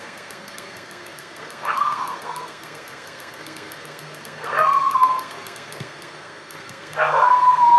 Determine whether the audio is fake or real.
fake